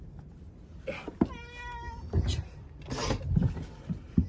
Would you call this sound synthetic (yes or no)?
no